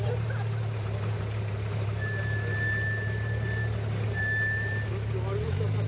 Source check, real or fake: real